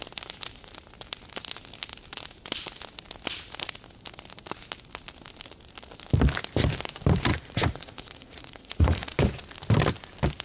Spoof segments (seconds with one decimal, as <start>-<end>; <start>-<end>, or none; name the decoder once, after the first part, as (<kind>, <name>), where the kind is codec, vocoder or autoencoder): 7.3-9.1 (vocoder, Vocos)